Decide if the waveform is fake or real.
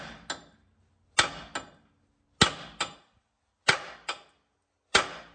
real